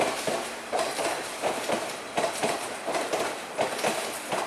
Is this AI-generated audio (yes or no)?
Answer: no